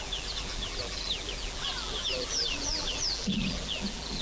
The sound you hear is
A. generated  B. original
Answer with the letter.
A